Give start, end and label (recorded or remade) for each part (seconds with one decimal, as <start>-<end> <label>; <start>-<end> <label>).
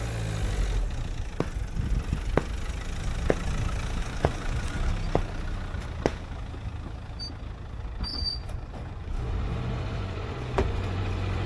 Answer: 0.0-4.0 recorded; 4.0-4.9 remade; 4.9-8.1 recorded; 8.1-11.5 remade